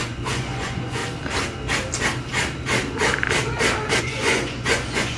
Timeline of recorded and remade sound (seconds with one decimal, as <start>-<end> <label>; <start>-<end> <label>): 0.0-1.0 remade; 1.0-4.0 recorded; 4.0-5.2 remade